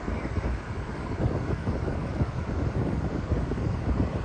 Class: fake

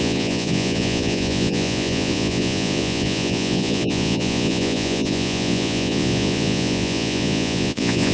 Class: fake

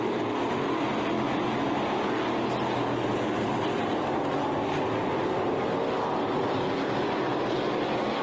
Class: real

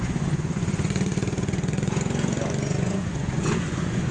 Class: fake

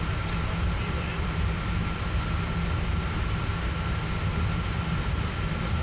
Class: real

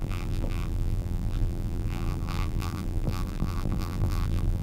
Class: fake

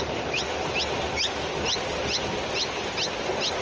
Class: real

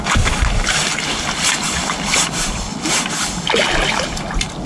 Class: real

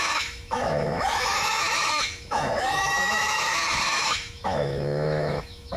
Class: fake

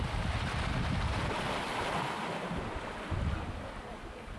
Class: real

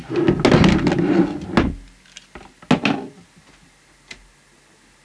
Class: real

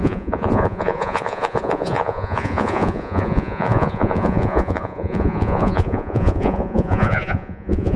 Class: fake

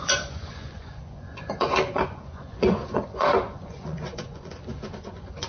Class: fake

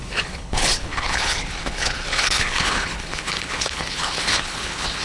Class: fake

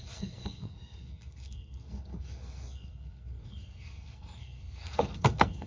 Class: fake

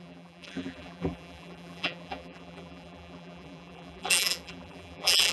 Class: fake